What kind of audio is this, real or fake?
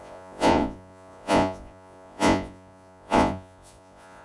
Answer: fake